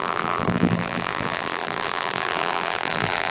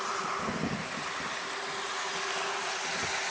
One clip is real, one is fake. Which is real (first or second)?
second